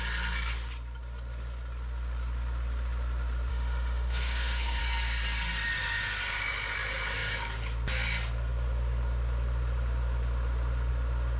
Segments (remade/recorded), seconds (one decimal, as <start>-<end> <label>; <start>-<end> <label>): 0.0-3.5 recorded; 3.5-4.8 remade; 4.8-11.4 recorded